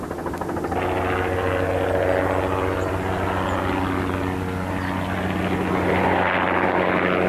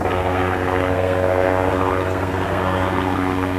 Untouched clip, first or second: first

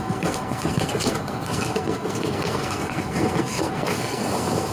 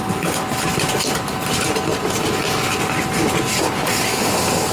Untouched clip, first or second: second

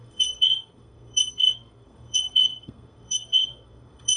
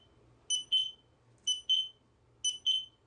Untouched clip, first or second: second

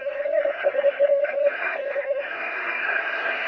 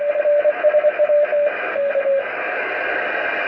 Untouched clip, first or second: second